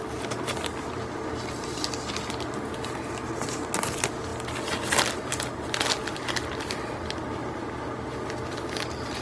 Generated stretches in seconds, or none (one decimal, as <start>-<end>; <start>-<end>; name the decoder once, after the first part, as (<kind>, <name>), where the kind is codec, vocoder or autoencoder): none